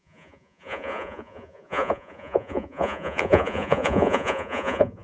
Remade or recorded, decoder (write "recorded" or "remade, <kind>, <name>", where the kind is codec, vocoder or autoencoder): remade, vocoder, Vocos